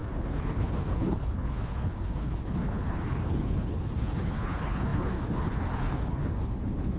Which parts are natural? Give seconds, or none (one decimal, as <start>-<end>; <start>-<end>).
none